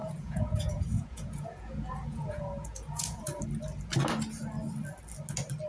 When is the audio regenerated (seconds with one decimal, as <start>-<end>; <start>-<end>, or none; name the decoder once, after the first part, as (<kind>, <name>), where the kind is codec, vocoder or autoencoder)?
0.0-3.4 (vocoder, Vocos)